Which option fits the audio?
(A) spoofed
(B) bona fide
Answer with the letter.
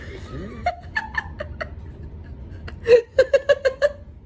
B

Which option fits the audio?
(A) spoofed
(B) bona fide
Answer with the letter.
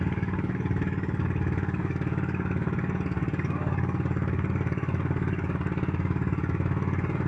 A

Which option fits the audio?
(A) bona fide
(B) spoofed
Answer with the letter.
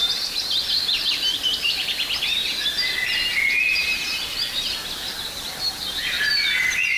A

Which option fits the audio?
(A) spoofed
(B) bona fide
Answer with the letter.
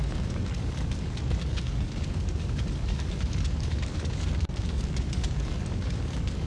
A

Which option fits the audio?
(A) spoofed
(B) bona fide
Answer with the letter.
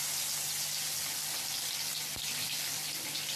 B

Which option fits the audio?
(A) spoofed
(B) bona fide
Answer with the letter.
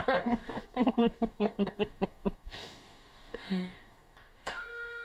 A